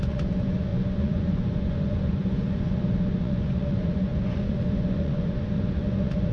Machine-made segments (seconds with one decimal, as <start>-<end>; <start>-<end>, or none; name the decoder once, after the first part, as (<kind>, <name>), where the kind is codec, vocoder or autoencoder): 0.0-6.3 (vocoder, Vocos)